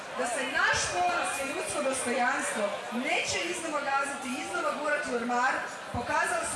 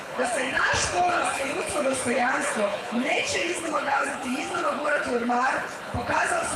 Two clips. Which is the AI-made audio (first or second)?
second